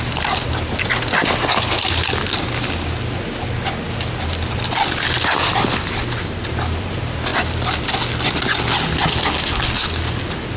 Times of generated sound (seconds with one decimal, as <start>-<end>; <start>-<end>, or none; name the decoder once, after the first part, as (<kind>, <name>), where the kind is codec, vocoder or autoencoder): none